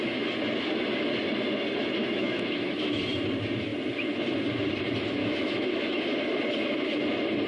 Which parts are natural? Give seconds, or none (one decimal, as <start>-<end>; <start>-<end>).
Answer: 0.0-2.0; 3.0-5.2; 6.0-7.5